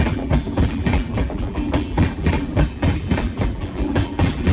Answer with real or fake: fake